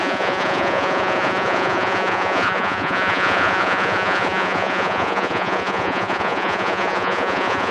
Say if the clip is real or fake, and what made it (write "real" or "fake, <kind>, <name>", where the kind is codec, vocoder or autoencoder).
fake, vocoder, Vocos